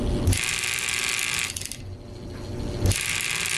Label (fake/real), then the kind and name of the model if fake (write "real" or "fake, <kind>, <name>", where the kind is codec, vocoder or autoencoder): real